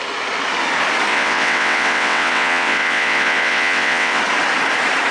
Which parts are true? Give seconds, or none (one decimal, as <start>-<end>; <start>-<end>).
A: 0.0-1.1; 4.2-5.1